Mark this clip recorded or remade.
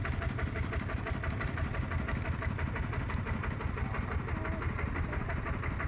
recorded